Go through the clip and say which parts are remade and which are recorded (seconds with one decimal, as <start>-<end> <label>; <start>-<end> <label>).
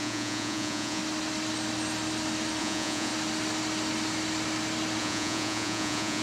0.0-1.0 remade; 1.0-2.6 recorded; 2.6-3.1 remade; 3.1-5.0 recorded; 5.0-6.2 remade